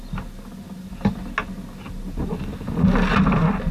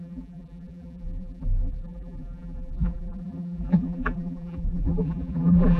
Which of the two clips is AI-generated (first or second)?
second